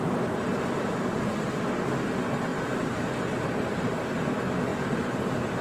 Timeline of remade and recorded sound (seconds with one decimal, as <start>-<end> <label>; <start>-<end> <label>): 0.0-5.6 recorded